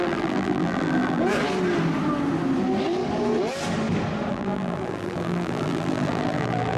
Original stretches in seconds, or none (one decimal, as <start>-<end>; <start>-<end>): 1.2-4.3